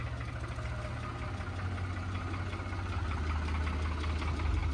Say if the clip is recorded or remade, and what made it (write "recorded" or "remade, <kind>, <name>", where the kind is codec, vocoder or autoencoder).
recorded